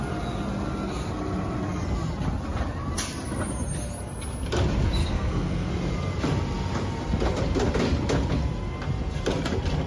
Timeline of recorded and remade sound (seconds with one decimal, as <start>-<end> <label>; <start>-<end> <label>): 0.0-5.0 recorded; 5.0-5.7 remade; 5.7-9.9 recorded